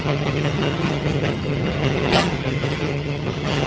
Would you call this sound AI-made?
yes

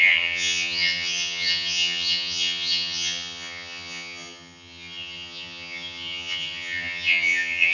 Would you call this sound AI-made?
yes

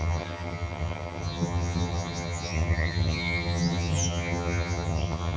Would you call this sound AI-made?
yes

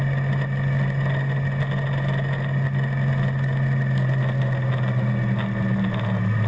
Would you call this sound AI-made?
no